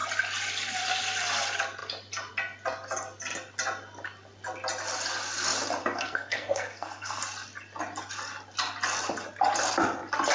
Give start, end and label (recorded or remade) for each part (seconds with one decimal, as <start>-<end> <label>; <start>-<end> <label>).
0.0-5.8 recorded; 5.8-7.2 remade; 7.2-10.3 recorded